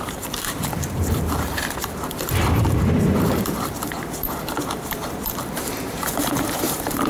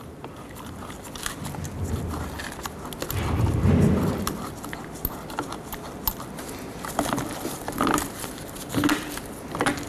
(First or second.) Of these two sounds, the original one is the second